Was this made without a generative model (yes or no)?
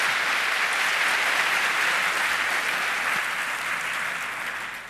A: yes